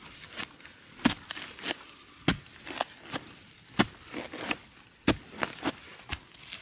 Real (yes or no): yes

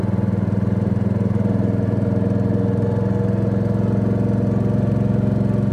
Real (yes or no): yes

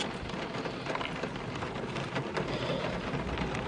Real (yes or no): yes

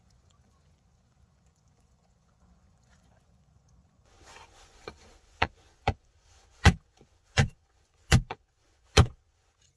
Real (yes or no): no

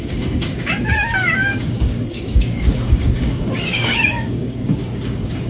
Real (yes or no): no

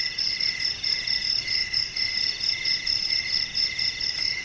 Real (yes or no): yes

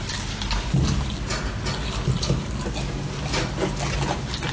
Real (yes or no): yes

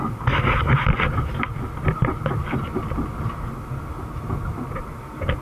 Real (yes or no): yes